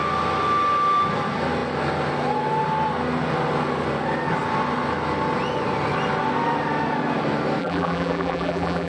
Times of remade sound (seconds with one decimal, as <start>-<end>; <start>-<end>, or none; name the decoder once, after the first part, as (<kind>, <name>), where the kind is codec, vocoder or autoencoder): 7.6-8.9 (vocoder, BigVGAN v2)